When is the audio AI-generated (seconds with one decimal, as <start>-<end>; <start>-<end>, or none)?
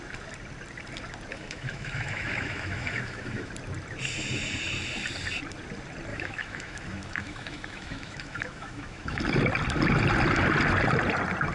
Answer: 1.3-3.5; 6.1-9.2